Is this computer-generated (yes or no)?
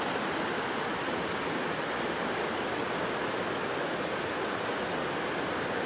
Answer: no